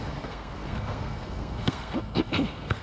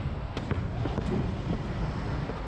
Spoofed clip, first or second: first